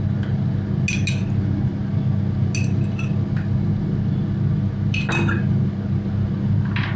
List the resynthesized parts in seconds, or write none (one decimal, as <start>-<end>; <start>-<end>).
none